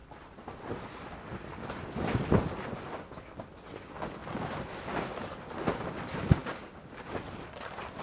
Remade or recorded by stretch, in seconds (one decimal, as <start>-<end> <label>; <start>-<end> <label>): 0.0-6.4 recorded; 6.4-7.1 remade; 7.1-8.0 recorded